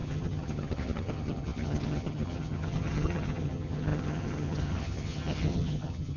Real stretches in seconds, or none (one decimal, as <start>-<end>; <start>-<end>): none